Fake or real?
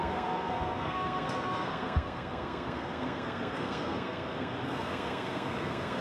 fake